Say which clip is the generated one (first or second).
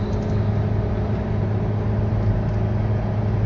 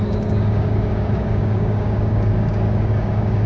second